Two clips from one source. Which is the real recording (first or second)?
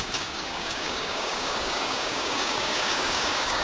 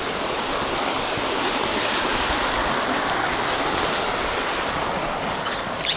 second